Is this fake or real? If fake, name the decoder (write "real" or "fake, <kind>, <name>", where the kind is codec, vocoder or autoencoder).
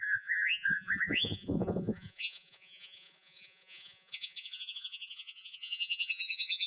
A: fake, vocoder, Vocos